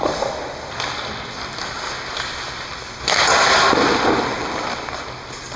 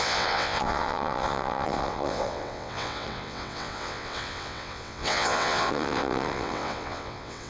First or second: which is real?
first